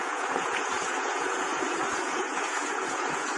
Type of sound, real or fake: fake